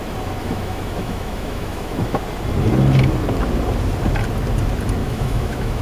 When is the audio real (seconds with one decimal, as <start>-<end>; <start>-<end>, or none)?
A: 0.0-0.4; 2.2-5.0